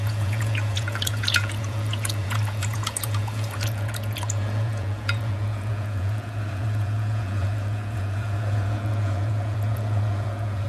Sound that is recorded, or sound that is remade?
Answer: remade